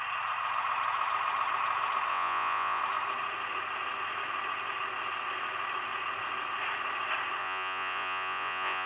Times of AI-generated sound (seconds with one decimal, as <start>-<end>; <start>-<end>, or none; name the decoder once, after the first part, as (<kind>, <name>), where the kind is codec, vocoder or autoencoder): 2.1-2.8 (vocoder, Vocos); 7.4-8.9